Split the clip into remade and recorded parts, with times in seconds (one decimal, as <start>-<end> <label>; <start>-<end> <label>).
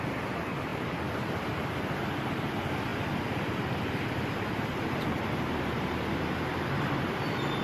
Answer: 0.0-7.6 recorded